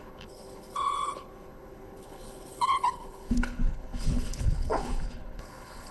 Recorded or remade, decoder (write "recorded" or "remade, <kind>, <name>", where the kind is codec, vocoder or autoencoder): remade, codec, HILCodec